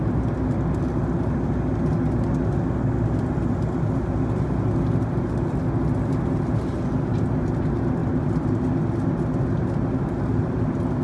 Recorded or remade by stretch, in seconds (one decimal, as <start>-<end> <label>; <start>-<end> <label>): 0.0-11.0 recorded